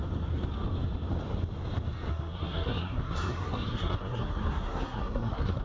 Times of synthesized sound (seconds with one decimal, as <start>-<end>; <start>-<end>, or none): 2.1-5.6